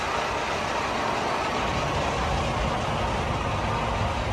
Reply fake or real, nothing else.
real